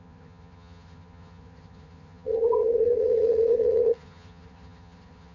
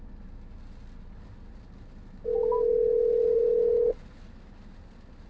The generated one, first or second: first